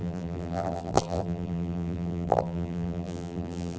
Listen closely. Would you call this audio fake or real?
fake